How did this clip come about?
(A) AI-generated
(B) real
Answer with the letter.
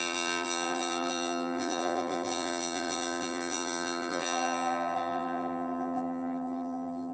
A